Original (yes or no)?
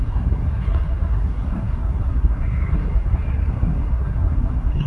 no